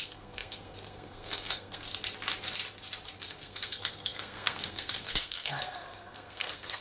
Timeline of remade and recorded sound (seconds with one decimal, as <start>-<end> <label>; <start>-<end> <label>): 0.0-1.9 remade; 1.9-3.2 recorded; 3.2-6.8 remade